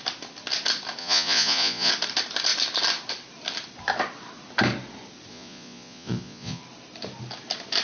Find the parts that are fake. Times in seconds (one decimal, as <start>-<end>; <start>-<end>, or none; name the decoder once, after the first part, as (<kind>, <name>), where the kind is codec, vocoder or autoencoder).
1.0-1.9 (vocoder, Vocos); 5.3-6.6